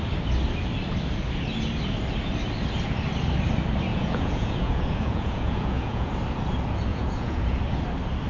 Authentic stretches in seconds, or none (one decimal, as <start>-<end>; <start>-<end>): 0.0-3.9; 6.1-6.9; 7.6-8.3